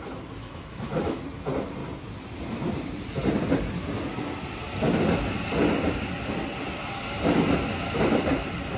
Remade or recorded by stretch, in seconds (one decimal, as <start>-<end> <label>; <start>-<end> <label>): 0.0-0.4 recorded; 0.4-1.2 remade; 1.2-8.8 recorded